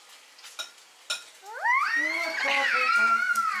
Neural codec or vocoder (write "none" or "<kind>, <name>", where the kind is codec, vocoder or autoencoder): none